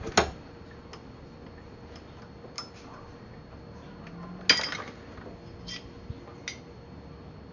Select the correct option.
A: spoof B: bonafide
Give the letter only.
B